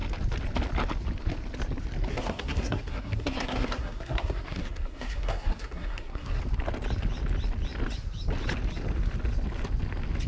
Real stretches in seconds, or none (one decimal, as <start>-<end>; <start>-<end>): 0.0-2.1; 6.4-10.3